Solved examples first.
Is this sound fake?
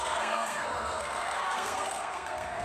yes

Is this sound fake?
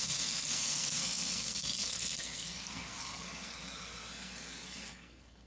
yes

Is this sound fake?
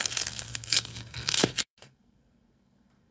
yes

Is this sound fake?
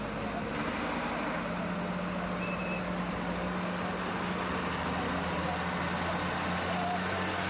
no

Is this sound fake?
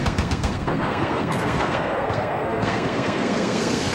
yes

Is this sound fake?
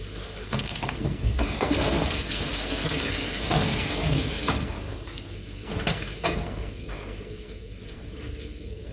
yes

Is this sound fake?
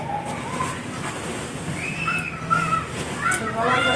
no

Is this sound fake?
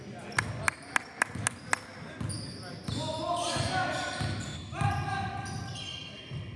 no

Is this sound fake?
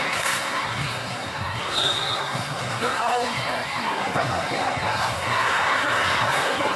yes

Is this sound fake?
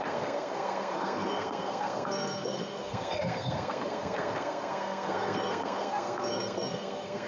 yes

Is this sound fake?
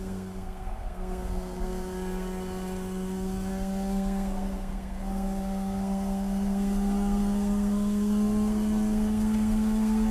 yes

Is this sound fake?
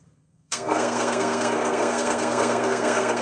yes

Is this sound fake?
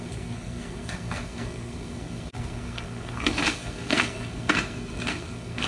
yes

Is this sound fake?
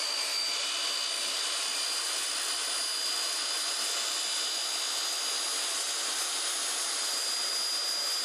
no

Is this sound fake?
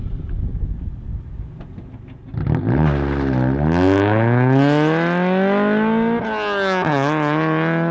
no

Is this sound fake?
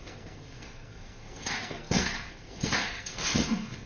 yes